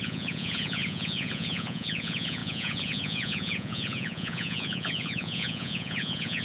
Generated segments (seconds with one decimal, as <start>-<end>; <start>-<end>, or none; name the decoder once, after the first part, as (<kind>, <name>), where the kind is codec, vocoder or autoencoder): 0.0-6.4 (vocoder, Vocos)